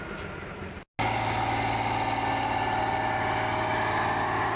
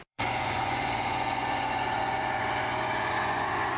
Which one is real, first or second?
first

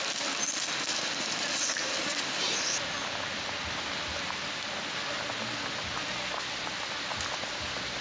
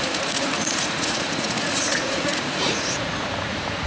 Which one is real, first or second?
first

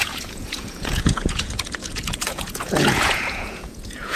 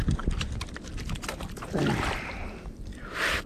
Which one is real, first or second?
second